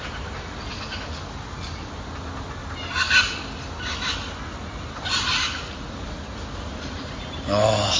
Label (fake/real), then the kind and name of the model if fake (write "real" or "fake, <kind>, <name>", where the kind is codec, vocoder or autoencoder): real